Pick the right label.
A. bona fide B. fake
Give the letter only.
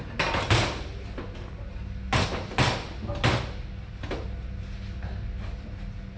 A